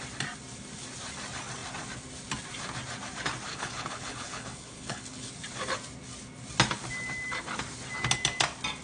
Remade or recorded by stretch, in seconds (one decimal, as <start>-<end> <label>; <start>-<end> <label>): 0.0-3.5 recorded; 3.5-5.3 remade; 5.3-8.8 recorded